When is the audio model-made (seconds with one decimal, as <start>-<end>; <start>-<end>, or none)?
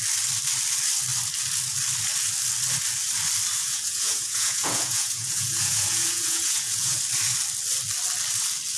3.6-7.0